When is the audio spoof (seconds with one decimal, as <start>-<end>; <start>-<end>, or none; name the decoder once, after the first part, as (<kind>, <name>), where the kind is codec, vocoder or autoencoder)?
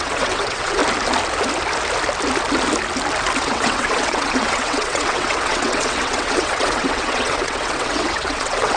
0.0-0.8 (vocoder, WaveNeXt); 3.4-8.8